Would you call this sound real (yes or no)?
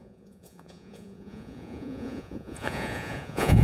no